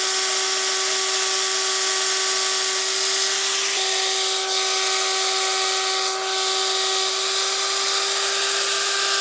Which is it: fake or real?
real